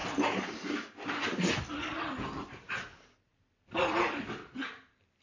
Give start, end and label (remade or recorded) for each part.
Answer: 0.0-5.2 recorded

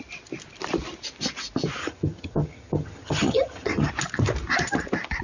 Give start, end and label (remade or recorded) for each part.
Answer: 0.0-1.8 recorded; 1.8-3.9 remade; 3.9-5.2 recorded